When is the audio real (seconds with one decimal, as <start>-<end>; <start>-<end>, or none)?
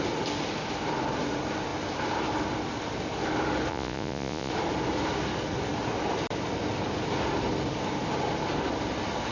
0.0-3.7; 4.5-9.3